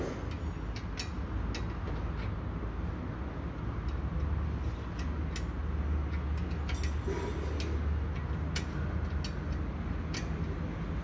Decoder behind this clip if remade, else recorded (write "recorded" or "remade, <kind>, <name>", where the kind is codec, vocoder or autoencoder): recorded